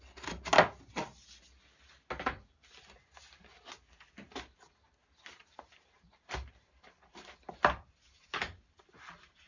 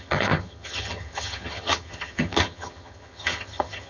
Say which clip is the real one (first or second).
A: first